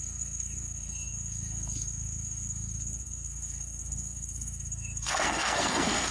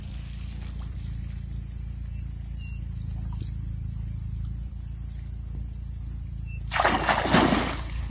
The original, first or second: second